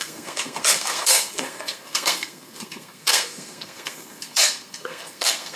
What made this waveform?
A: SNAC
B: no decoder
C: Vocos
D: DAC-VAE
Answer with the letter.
A